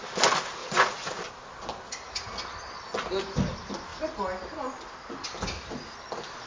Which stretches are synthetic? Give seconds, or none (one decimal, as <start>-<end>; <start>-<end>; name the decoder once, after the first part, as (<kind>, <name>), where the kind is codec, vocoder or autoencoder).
0.6-1.2 (vocoder, Vocos)